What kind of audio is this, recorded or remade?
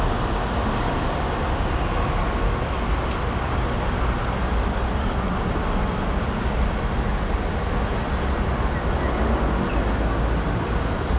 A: recorded